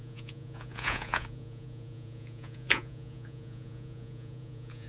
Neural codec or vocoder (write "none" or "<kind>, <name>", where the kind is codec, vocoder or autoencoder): vocoder, Vocos